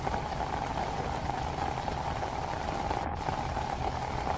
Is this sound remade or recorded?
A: recorded